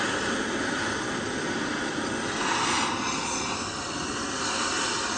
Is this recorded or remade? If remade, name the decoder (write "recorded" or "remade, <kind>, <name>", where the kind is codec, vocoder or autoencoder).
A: recorded